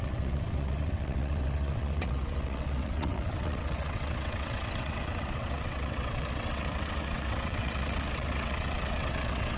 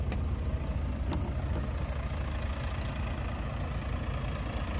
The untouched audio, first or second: second